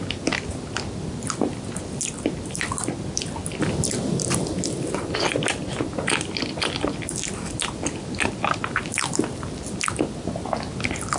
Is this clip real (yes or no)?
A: yes